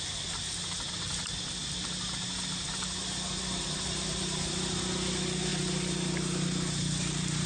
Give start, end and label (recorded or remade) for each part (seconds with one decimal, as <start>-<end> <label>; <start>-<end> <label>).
0.0-7.5 recorded